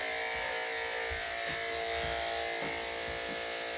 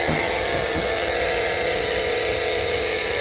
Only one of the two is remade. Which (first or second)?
second